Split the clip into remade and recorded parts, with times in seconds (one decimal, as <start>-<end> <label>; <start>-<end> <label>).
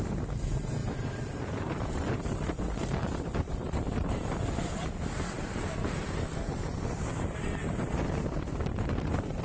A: 0.0-0.8 recorded; 0.8-5.5 remade; 5.5-6.6 recorded; 6.6-9.4 remade